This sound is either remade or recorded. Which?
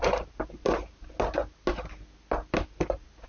recorded